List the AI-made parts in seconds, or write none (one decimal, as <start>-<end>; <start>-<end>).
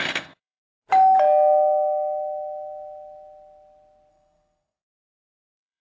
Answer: 0.0-0.6; 4.1-5.8